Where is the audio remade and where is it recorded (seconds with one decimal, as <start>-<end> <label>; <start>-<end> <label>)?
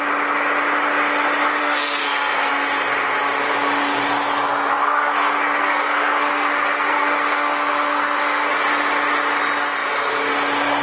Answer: 0.0-1.6 recorded; 1.6-2.5 remade; 2.5-4.7 recorded; 4.7-8.5 remade; 8.5-10.8 recorded